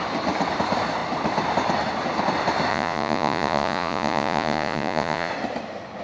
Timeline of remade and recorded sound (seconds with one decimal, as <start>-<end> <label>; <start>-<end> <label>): 0.0-2.7 recorded; 2.7-5.3 remade; 5.3-6.0 recorded